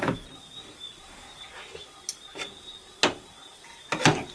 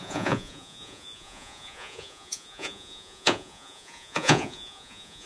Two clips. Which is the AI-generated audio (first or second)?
second